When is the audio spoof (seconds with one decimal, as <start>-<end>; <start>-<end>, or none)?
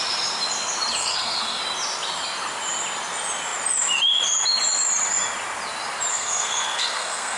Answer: 1.0-1.6; 6.1-7.4